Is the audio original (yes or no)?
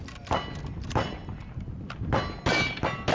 yes